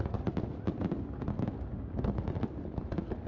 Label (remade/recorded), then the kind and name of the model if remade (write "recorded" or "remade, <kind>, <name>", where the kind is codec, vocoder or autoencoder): recorded